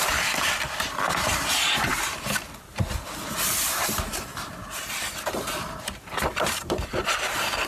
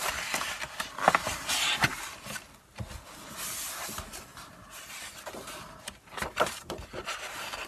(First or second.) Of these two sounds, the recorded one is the second